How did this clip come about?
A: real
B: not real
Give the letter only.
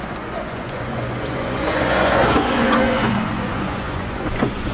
B